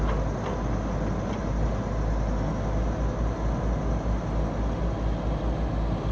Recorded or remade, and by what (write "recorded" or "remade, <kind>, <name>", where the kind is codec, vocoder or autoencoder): recorded